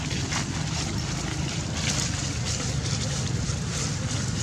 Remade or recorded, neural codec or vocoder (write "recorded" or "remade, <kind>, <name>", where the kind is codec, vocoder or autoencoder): recorded